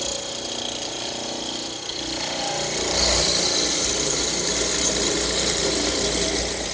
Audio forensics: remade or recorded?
recorded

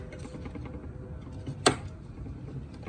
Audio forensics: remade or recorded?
recorded